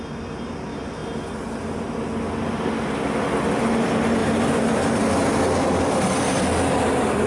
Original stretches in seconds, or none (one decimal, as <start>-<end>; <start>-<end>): 0.0-4.2; 5.0-7.3